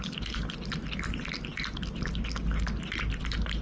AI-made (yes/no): no